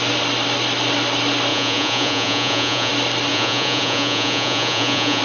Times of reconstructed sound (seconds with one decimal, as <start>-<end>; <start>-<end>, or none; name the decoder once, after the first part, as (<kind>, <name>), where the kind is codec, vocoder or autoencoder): 1.5-2.9 (vocoder, Vocos); 3.3-5.2